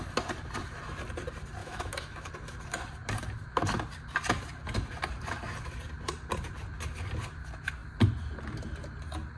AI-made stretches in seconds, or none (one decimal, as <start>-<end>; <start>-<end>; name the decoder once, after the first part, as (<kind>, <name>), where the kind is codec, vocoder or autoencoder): 1.6-2.3 (autoencoder, DAC-VAE)